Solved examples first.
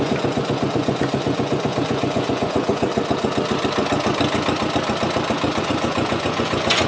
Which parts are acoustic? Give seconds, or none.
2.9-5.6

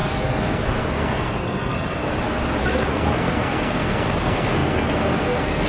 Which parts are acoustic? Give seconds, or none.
2.1-2.6